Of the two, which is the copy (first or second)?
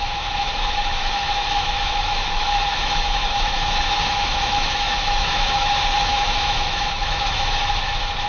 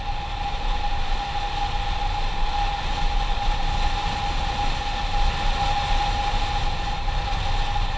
first